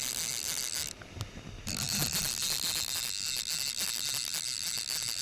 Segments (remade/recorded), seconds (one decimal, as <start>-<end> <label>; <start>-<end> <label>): 0.0-5.2 recorded